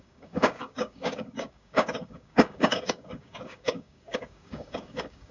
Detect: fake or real fake